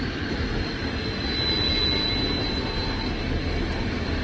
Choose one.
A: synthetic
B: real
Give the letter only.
B